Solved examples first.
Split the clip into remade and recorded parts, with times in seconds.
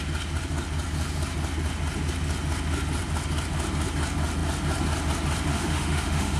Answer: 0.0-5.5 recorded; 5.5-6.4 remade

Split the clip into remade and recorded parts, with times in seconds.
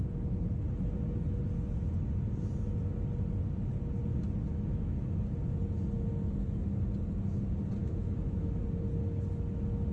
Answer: 0.0-4.5 recorded; 4.5-5.2 remade; 5.2-7.8 recorded; 7.8-8.6 remade; 8.6-9.9 recorded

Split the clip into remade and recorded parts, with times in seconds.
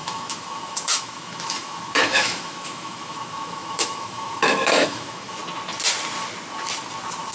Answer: 0.0-5.4 remade; 5.4-7.3 recorded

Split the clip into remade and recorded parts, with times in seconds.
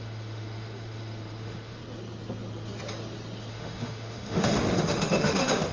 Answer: 0.0-1.8 remade; 1.8-3.5 recorded; 3.5-5.7 remade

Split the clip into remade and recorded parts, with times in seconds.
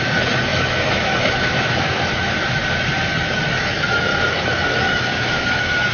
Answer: 0.0-2.6 remade; 2.6-3.6 recorded; 3.6-4.1 remade; 4.1-4.8 recorded; 4.8-5.9 remade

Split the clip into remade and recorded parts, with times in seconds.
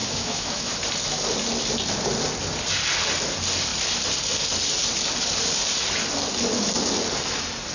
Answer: 0.0-0.7 remade; 0.7-7.7 recorded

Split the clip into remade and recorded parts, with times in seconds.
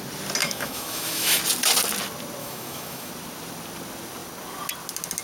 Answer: 0.0-0.4 recorded; 0.4-1.4 remade; 1.4-2.4 recorded; 2.4-3.1 remade; 3.1-5.2 recorded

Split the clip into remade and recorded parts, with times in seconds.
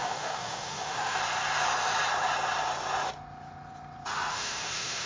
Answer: 0.0-1.2 remade; 1.2-4.3 recorded; 4.3-5.1 remade